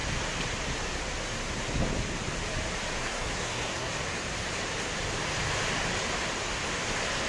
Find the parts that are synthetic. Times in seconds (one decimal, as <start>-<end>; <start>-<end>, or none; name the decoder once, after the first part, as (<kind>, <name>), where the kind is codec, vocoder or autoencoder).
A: 3.0-3.9 (codec, SNAC)